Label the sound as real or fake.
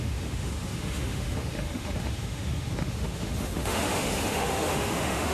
fake